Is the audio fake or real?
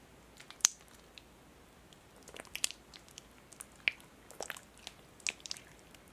real